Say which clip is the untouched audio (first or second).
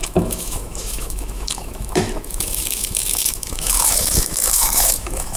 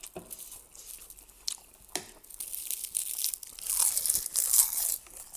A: second